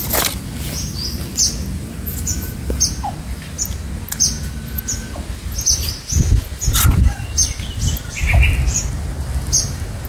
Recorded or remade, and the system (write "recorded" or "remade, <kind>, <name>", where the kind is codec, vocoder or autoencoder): recorded